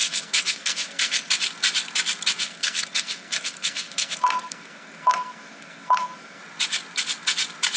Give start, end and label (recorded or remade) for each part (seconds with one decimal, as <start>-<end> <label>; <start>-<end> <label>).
0.0-1.3 remade; 1.3-2.4 recorded; 2.4-6.4 remade; 6.4-7.8 recorded